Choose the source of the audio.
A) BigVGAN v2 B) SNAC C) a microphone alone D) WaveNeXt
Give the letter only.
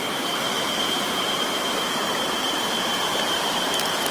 A